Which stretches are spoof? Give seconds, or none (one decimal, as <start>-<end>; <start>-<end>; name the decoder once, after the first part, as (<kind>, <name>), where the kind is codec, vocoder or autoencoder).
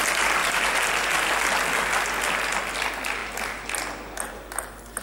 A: 0.4-1.3 (vocoder, BigVGAN v2)